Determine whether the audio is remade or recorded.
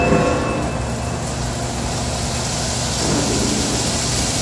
recorded